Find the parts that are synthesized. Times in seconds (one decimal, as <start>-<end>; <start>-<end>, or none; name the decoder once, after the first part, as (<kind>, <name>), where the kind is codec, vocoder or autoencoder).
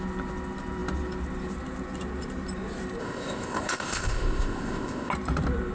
3.0-5.1 (codec, ZipCodec)